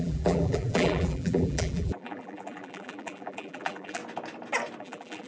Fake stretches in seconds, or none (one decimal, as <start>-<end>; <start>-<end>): 0.0-4.0; 4.8-5.3